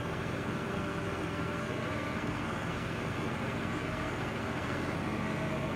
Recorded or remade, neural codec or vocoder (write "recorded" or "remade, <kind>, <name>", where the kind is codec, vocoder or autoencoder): remade, codec, SNAC